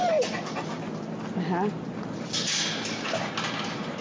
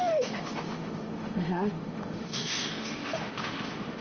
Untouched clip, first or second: first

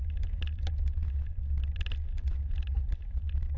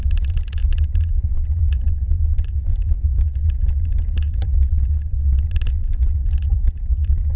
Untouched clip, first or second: first